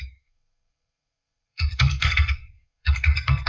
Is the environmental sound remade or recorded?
remade